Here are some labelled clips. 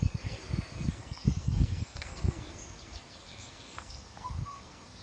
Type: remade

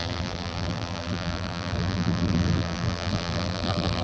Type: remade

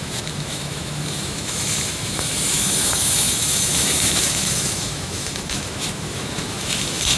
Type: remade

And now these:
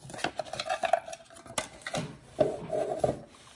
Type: recorded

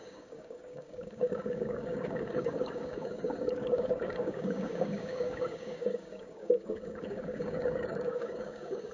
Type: remade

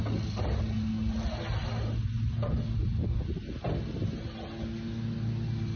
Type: recorded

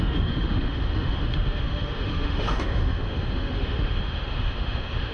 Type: remade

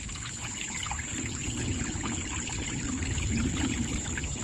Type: remade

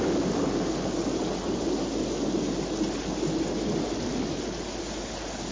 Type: recorded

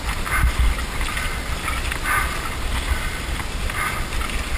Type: recorded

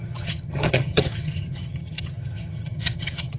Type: remade